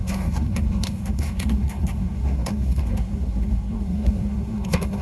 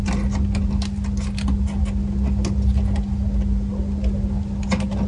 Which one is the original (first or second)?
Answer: second